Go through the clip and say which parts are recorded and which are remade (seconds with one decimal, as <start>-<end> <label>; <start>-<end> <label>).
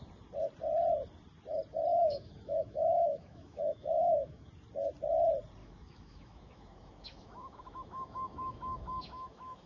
0.0-1.9 recorded; 1.9-4.5 remade; 4.5-5.6 recorded; 5.6-9.7 remade